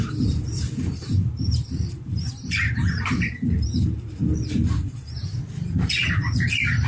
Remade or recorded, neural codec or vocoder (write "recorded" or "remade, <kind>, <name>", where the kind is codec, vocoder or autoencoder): remade, vocoder, BigVGAN v2